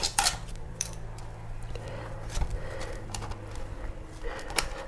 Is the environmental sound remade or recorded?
remade